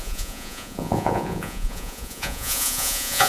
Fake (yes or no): yes